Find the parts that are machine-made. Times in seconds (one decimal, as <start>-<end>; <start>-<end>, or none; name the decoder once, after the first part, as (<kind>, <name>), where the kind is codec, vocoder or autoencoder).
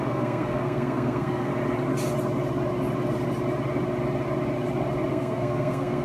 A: 0.0-1.5 (codec, SNAC); 5.1-6.0